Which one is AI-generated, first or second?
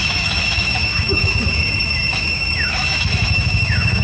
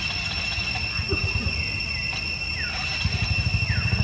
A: first